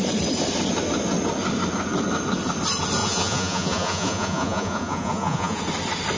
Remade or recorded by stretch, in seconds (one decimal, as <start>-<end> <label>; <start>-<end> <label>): 0.0-3.0 recorded; 3.0-5.6 remade; 5.6-6.2 recorded